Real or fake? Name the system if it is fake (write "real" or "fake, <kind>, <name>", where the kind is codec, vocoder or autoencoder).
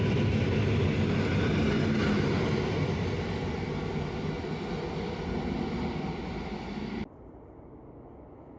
real